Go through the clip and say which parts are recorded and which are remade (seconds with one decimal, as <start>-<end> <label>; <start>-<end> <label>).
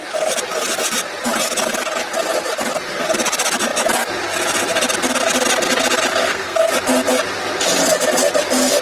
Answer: 0.0-6.2 recorded; 6.2-6.7 remade; 6.7-8.8 recorded